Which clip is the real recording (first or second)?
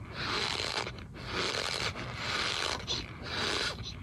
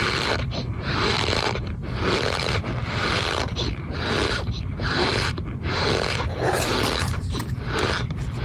first